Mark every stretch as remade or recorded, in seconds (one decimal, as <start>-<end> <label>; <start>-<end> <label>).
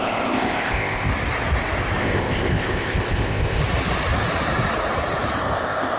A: 0.0-1.1 remade; 1.1-2.0 recorded; 2.0-3.6 remade; 3.6-5.4 recorded; 5.4-6.0 remade